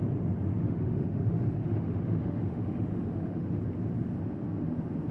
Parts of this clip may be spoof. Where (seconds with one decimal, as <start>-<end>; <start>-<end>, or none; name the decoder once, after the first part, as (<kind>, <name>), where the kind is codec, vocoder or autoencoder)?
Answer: 0.5-3.6 (autoencoder, DAC-VAE)